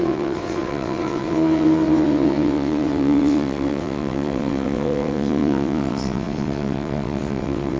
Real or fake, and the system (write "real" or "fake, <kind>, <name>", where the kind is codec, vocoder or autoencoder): fake, vocoder, WaveNeXt